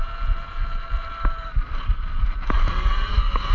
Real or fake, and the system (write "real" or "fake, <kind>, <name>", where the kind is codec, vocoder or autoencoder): real